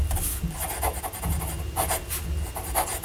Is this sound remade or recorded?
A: recorded